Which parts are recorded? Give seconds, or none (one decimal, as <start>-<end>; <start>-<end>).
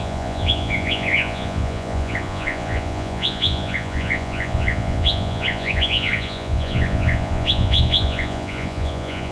none